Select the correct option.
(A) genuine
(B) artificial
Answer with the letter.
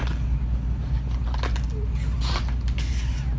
A